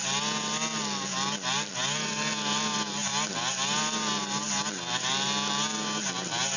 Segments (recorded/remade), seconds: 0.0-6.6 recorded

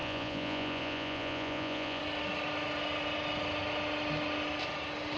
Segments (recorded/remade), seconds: 0.0-2.0 remade; 2.0-5.2 recorded

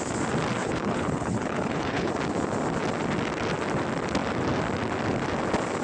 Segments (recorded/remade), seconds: 0.0-0.6 recorded; 0.6-2.1 remade; 2.1-5.8 recorded